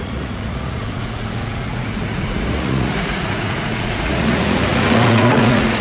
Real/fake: fake